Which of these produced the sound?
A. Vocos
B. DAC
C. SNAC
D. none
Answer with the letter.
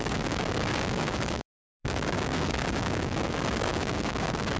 B